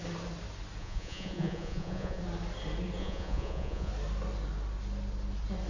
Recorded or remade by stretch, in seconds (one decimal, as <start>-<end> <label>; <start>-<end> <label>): 0.0-0.8 recorded; 0.8-2.2 remade; 2.2-3.0 recorded; 3.0-3.9 remade; 3.9-5.7 recorded